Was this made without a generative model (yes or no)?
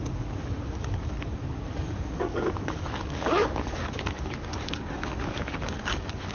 no